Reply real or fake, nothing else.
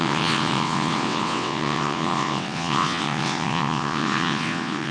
fake